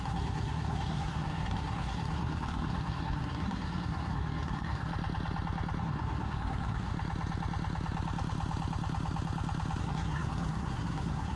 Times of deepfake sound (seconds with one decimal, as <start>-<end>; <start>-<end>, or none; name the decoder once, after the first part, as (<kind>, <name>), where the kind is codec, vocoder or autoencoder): 0.0-4.9 (codec, SNAC); 5.8-6.9; 9.8-11.4